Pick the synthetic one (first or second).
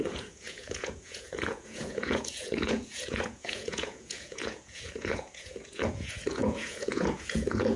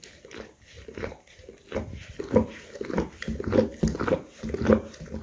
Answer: first